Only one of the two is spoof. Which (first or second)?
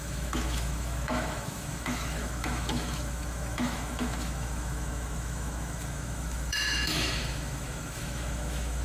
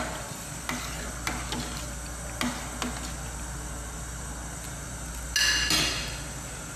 first